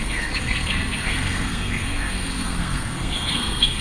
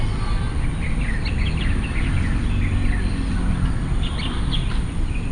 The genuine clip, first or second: second